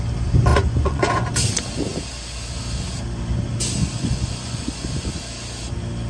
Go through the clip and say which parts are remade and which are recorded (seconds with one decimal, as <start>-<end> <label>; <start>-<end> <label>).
0.0-0.5 recorded; 0.5-1.3 remade; 1.3-3.8 recorded; 3.8-5.1 remade; 5.1-6.1 recorded